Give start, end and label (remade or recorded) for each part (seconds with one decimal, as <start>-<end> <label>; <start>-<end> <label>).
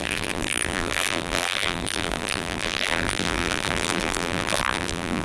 0.0-5.2 remade